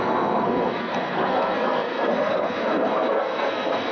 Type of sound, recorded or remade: remade